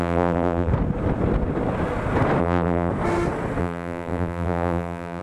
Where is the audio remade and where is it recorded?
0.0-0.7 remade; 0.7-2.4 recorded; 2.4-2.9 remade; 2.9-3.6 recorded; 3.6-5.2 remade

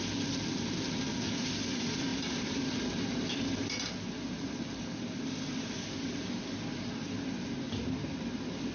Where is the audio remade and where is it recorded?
0.0-8.7 recorded

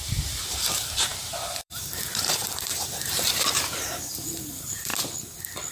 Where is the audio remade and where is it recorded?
0.0-4.9 remade; 4.9-5.7 recorded

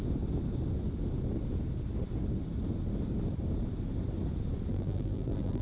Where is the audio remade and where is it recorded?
0.0-4.7 recorded; 4.7-5.6 remade

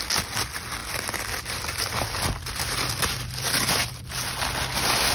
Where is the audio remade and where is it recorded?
0.0-0.8 recorded; 0.8-3.9 remade; 3.9-5.1 recorded

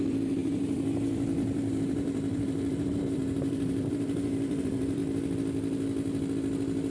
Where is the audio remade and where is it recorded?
0.0-5.0 remade; 5.0-6.9 recorded